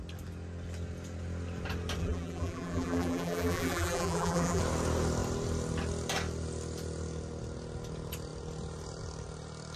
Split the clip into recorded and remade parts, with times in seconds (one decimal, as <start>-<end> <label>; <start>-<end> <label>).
0.0-2.0 recorded; 2.0-4.6 remade; 4.6-9.8 recorded